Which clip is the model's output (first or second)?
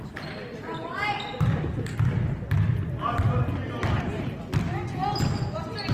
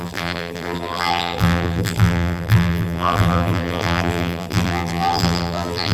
second